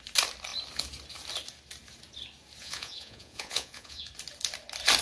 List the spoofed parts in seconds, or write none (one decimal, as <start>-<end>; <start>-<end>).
2.6-4.1